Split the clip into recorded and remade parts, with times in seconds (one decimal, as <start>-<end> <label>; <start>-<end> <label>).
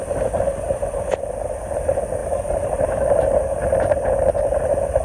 0.0-5.0 recorded